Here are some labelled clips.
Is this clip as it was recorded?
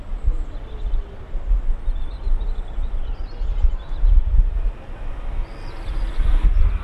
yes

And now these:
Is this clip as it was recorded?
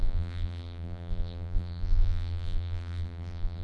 no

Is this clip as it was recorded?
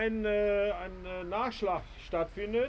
yes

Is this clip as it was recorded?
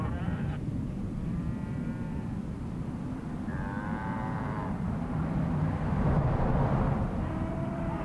no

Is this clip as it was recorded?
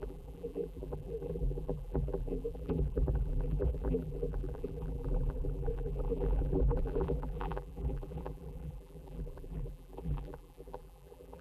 no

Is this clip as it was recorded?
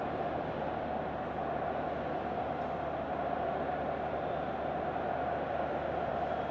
yes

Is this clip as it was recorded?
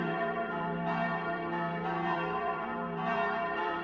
no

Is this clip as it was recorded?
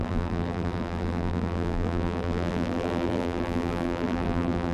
no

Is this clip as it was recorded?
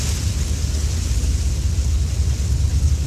yes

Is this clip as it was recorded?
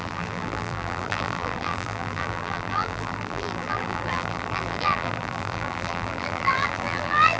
no